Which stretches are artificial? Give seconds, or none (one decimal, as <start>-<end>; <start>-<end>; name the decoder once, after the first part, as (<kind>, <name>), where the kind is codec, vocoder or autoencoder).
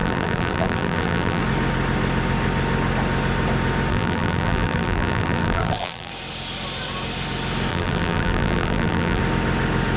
0.0-1.4 (vocoder, BigVGAN v2); 3.9-6.1; 7.7-9.2